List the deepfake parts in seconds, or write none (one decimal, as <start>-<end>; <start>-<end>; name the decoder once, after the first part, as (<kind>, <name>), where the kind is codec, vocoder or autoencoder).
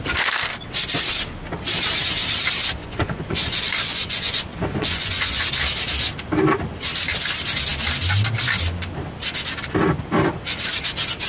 2.8-5.4 (vocoder, Vocos)